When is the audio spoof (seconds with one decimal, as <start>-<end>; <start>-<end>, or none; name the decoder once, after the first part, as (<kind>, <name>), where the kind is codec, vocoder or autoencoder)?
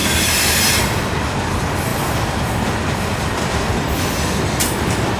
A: 0.0-5.2 (vocoder, BigVGAN v2)